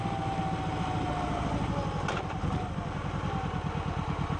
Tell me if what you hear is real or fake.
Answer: real